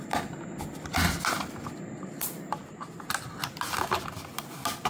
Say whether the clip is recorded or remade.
recorded